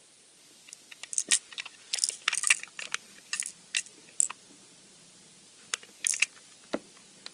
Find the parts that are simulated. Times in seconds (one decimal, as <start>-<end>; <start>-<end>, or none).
none